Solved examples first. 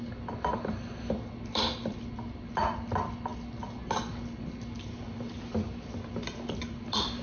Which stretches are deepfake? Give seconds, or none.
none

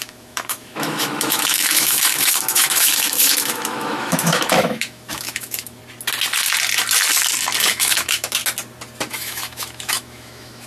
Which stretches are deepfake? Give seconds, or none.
0.0-5.8 (autoencoder, DAC-VAE); 7.6-8.4; 9.1-10.7

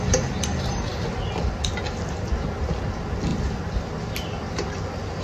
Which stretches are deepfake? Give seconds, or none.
none

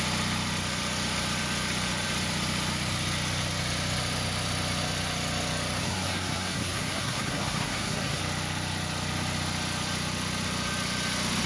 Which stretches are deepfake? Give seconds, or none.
5.8-8.2 (codec, SNAC)

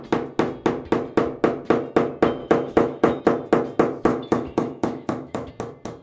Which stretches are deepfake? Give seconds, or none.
2.4-3.2 (autoencoder, DAC-VAE); 4.1-5.5

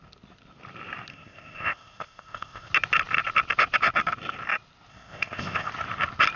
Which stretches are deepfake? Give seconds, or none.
1.1-2.7 (codec, ZipCodec); 4.9-5.7

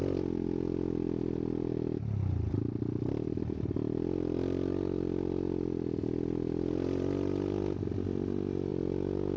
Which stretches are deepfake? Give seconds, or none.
none